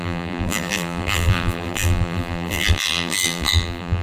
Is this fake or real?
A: fake